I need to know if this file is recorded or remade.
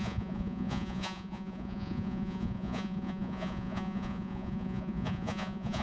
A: remade